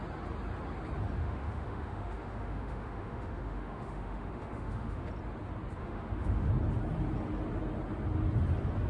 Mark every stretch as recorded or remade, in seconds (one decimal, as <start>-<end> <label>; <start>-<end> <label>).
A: 0.0-1.2 recorded; 1.2-5.1 remade; 5.1-5.8 recorded; 5.8-6.5 remade; 6.5-8.9 recorded